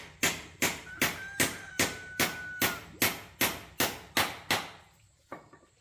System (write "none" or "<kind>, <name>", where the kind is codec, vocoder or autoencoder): none